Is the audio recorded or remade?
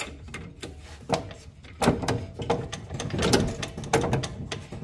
recorded